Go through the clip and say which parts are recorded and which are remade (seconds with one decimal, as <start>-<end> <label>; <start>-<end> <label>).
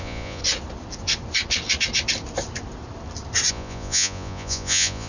0.0-0.4 remade; 0.4-3.5 recorded; 3.5-5.1 remade